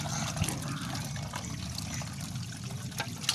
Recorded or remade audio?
recorded